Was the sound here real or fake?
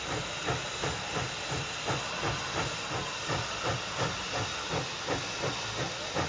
real